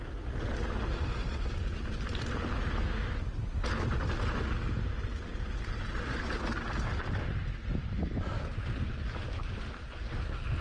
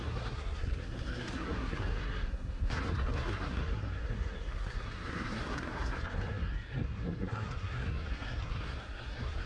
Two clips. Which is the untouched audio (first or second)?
first